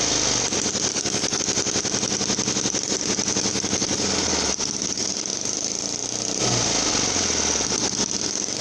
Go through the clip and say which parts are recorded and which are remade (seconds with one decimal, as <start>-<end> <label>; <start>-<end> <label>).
0.0-0.9 recorded; 0.9-1.4 remade; 1.4-3.5 recorded; 3.5-4.5 remade; 4.5-8.6 recorded